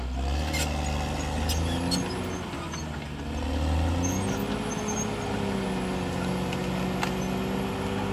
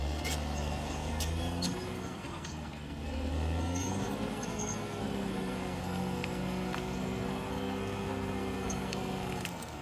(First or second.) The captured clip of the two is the first